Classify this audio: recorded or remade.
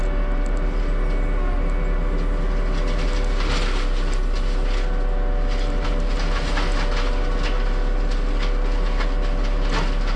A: recorded